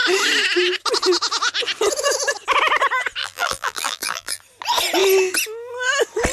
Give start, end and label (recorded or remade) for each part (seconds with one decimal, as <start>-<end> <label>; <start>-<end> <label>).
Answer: 0.0-3.2 recorded; 3.2-4.4 remade; 4.4-6.3 recorded